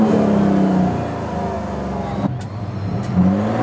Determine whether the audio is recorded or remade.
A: recorded